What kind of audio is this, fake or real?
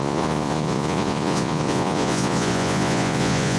fake